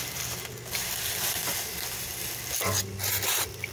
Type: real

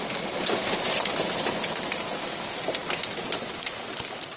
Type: real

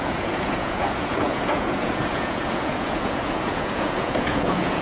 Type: fake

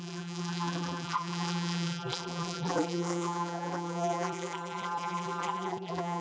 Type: fake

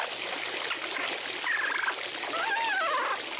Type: real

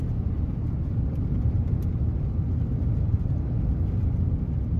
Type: real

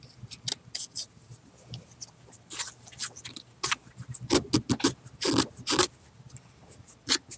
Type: real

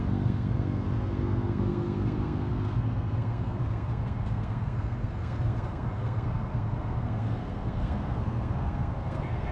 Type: fake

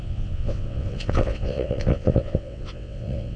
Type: fake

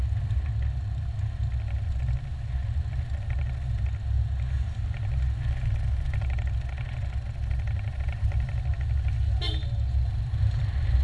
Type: real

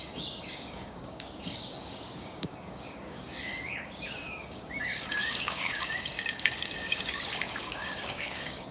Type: fake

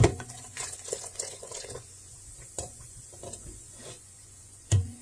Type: fake